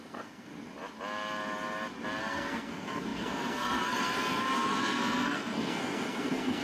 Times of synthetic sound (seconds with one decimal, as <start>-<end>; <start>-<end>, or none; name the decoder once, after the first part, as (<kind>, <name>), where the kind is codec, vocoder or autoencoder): 0.0-0.5 (codec, SNAC); 2.2-6.6